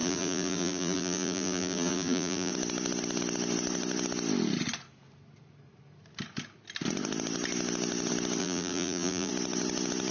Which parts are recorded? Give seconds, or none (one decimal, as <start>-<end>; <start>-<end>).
2.5-8.4; 9.3-10.1